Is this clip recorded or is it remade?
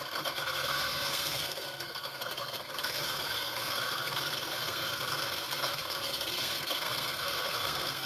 remade